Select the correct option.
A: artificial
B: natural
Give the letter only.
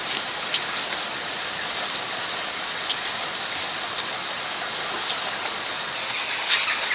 B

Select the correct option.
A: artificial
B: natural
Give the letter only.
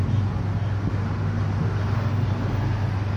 B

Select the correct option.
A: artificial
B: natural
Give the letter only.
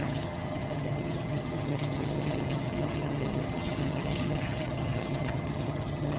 A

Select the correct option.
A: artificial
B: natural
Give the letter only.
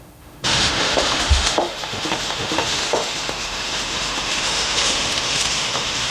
A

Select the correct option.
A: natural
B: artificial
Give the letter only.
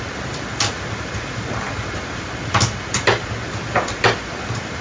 A